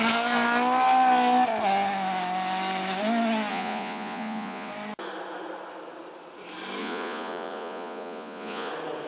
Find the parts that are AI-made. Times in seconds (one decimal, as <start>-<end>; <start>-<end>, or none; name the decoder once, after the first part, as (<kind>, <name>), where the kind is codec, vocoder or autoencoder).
3.5-4.7 (vocoder, Vocos); 6.8-8.7